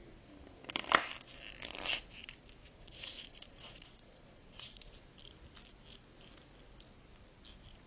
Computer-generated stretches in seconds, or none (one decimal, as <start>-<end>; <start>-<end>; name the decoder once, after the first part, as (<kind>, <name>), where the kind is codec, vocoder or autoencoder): 2.6-5.0 (vocoder, Vocos)